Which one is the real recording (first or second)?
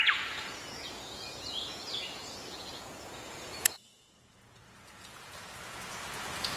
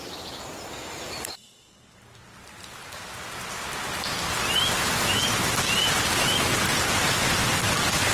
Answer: second